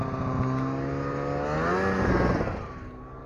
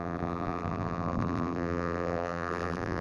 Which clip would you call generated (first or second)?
second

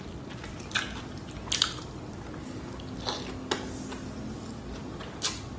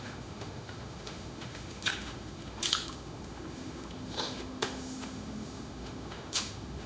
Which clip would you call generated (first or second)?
second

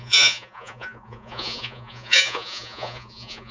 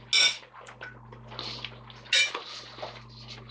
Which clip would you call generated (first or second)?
first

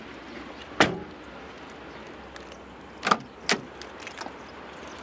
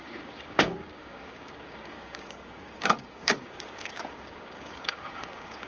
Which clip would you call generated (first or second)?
second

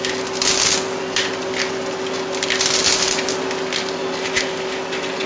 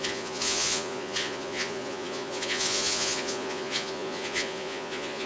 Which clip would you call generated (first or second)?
second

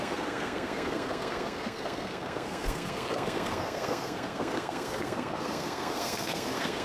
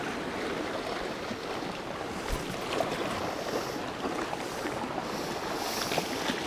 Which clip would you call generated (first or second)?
first